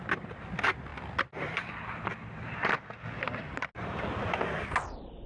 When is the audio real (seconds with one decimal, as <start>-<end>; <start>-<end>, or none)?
0.0-5.3